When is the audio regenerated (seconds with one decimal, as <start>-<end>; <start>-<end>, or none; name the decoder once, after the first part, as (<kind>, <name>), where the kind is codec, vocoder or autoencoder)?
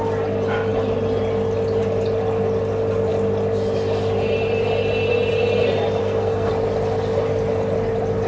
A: 6.0-6.5 (codec, SNAC)